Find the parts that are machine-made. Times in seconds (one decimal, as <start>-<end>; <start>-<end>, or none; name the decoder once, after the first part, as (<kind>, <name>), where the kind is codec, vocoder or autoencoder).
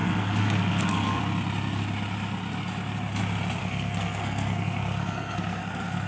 0.0-1.2 (codec, SNAC); 3.6-6.1